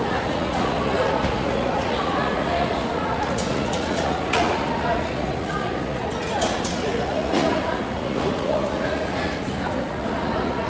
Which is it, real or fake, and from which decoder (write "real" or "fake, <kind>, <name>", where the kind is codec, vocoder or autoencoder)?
fake, vocoder, Vocos